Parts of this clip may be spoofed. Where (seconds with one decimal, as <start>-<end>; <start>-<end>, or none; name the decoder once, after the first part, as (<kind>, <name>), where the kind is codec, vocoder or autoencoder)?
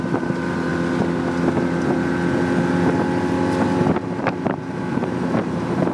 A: 0.0-0.7 (vocoder, BigVGAN v2); 4.2-5.9